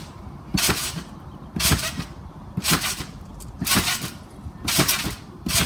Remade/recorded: remade